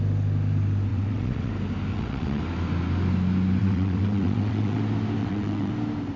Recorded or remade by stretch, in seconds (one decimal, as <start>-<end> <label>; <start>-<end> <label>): 0.0-0.9 recorded; 0.9-1.5 remade; 1.5-1.9 recorded; 1.9-2.4 remade; 2.4-3.6 recorded; 3.6-4.8 remade; 4.8-5.2 recorded; 5.2-5.7 remade; 5.7-6.2 recorded

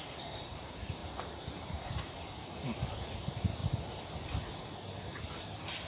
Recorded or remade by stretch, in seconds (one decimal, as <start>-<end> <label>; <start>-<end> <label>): 0.0-5.9 remade

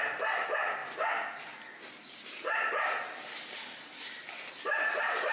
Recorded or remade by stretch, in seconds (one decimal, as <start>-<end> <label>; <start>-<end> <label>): 0.0-0.8 remade; 0.8-1.8 recorded; 1.8-5.3 remade

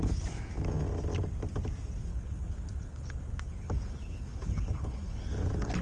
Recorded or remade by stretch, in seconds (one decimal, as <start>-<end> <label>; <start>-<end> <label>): 0.0-2.1 recorded; 2.1-5.8 remade

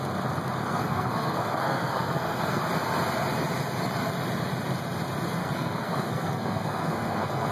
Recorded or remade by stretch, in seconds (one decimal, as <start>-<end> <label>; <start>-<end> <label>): 0.0-0.6 recorded; 0.6-2.6 remade; 2.6-5.4 recorded; 5.4-7.5 remade

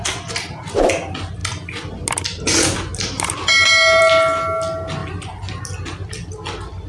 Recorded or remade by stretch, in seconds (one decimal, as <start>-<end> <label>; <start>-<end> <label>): 0.0-6.9 recorded